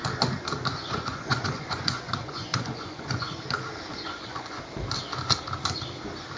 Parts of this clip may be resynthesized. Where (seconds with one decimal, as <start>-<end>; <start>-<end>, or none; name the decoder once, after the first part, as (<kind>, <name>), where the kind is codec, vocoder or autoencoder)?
0.7-3.4 (vocoder, Vocos); 3.9-4.6